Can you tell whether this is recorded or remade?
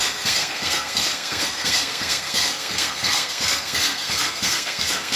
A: remade